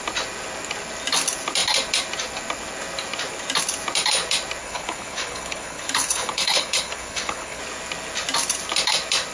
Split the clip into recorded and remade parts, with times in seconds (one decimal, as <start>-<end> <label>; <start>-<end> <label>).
0.0-4.6 recorded; 4.6-7.6 remade; 7.6-9.3 recorded